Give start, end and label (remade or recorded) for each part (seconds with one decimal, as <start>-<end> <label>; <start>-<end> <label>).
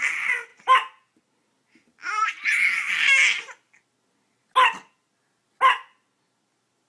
0.0-6.9 recorded